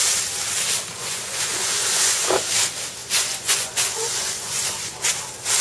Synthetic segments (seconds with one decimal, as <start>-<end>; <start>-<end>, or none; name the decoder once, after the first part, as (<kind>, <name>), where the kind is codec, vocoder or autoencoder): 0.9-2.5 (vocoder, Vocos); 3.0-5.0